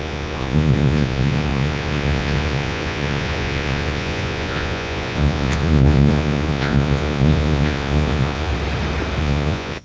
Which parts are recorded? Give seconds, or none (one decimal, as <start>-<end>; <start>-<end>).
8.5-9.2